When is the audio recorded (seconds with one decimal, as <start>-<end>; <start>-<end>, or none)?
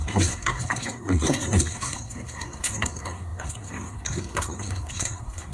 none